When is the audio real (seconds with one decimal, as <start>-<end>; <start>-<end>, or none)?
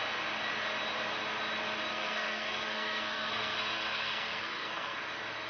0.0-1.9; 5.0-5.5